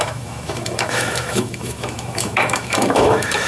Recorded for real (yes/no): no